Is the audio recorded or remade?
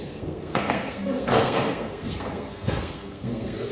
remade